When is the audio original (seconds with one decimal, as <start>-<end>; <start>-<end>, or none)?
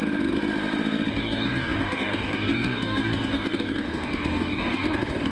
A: 0.0-1.1